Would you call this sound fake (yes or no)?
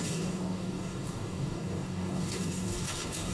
yes